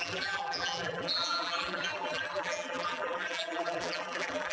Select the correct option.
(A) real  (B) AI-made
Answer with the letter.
B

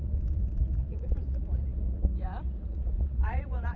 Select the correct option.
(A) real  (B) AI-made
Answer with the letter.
B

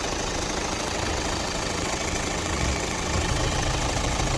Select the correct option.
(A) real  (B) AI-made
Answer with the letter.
B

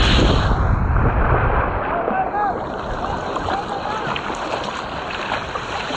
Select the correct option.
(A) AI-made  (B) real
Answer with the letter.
B